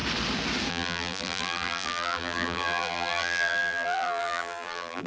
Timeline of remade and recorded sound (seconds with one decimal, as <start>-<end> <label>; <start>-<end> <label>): 0.0-0.7 recorded; 0.7-5.1 remade